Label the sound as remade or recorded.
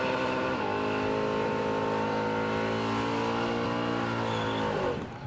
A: recorded